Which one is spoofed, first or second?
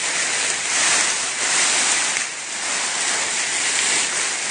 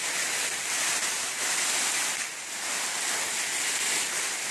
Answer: first